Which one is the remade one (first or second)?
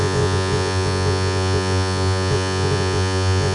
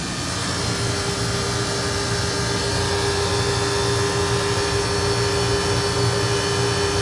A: first